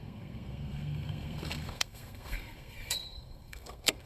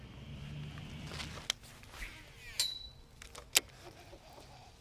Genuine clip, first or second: second